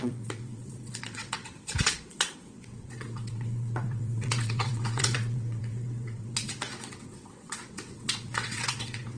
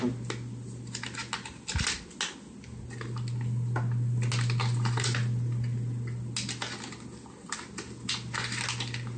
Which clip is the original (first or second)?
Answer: second